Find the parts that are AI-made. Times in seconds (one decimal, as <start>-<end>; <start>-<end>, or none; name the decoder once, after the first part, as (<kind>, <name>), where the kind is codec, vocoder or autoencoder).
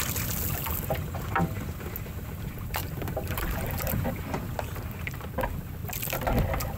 2.8-4.2 (vocoder, BigVGAN v2)